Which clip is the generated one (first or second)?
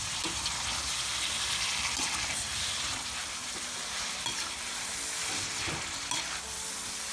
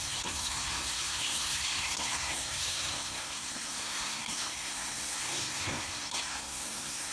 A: second